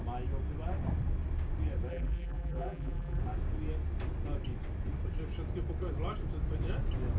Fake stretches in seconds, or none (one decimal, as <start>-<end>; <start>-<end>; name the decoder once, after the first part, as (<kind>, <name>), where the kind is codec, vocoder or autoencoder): 1.9-3.2 (vocoder, BigVGAN v2)